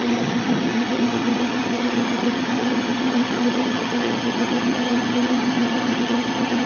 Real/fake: fake